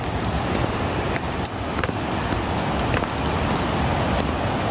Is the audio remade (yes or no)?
no